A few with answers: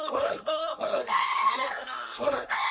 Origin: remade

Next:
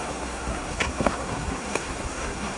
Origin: remade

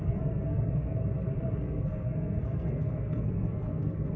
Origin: remade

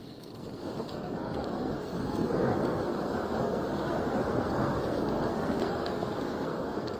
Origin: remade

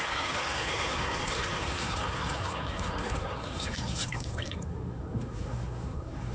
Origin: remade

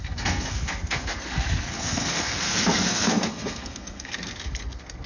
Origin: remade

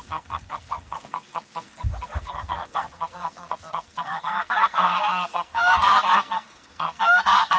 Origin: remade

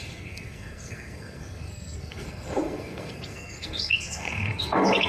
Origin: remade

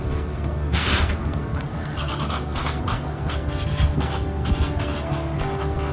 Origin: remade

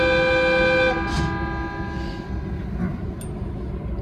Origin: recorded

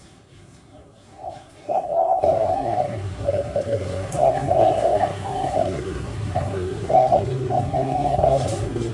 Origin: remade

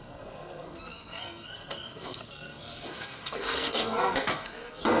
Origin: remade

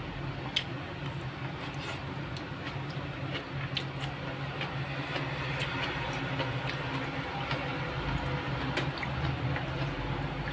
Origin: recorded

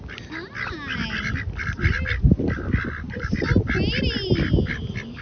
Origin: recorded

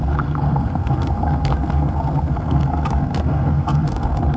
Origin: remade